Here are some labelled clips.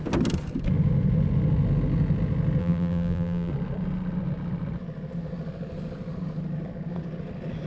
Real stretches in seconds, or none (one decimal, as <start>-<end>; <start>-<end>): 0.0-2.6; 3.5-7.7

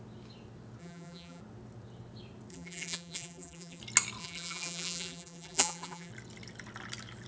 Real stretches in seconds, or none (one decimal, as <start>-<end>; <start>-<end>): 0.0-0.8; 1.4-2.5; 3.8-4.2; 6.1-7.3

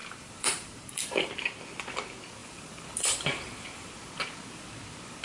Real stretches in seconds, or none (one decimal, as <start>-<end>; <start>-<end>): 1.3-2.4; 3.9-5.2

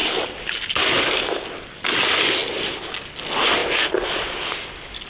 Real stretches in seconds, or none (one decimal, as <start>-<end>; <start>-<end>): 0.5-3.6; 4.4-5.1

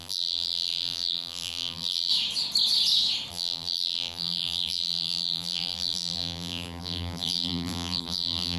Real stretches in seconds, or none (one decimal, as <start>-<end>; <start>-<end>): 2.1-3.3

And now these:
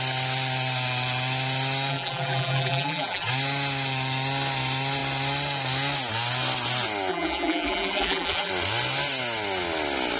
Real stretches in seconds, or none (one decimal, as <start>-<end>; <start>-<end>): 0.0-1.9; 3.3-7.1; 8.5-10.2

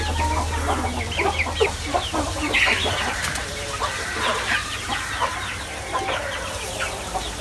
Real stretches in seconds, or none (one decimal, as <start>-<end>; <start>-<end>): 0.0-2.8; 5.5-7.4